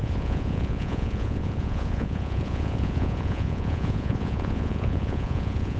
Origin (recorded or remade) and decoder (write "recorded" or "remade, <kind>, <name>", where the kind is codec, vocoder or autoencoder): remade, vocoder, Vocos